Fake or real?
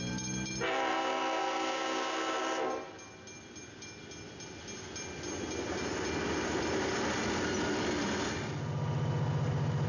real